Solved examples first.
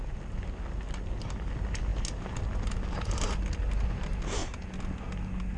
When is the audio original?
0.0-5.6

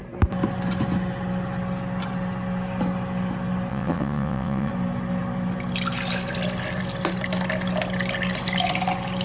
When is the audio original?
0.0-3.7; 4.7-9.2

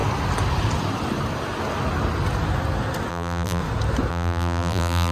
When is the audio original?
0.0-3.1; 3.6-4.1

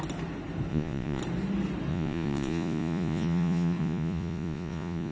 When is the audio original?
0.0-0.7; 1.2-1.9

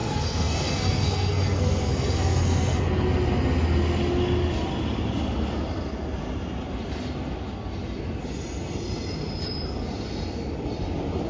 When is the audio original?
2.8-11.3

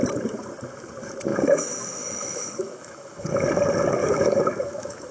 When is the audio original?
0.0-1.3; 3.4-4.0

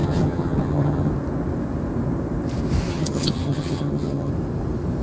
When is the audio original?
1.1-2.9; 4.3-5.0